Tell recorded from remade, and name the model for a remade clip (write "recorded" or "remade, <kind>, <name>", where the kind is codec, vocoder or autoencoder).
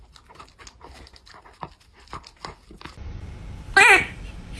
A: recorded